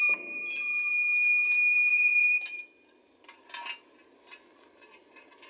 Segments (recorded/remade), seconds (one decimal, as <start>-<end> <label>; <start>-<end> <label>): 0.0-1.9 recorded; 1.9-2.6 remade; 2.6-5.5 recorded